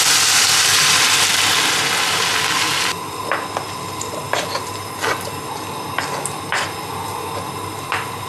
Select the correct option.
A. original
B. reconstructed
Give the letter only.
A